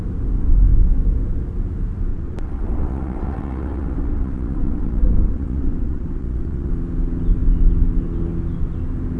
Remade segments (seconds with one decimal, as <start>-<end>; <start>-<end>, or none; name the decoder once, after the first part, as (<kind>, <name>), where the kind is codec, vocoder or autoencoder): 2.1-6.7 (vocoder, WaveNeXt)